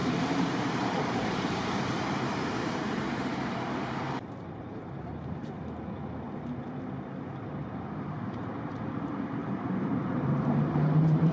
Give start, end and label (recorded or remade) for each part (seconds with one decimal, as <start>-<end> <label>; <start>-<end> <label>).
0.0-5.4 remade; 5.4-7.5 recorded; 7.5-11.3 remade